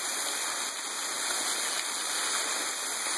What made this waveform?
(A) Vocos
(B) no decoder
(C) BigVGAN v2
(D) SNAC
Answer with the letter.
B